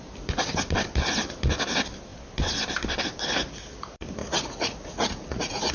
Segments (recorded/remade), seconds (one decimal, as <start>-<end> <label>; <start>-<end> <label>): 0.0-4.2 recorded; 4.2-5.7 remade

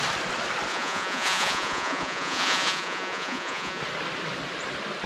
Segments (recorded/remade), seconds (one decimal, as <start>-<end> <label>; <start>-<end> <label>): 0.0-0.7 recorded; 0.7-3.8 remade; 3.8-5.1 recorded